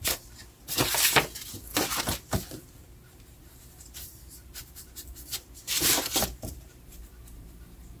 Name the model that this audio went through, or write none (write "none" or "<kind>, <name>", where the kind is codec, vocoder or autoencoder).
vocoder, BigVGAN v2